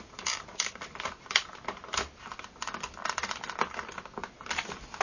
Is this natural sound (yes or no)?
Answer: yes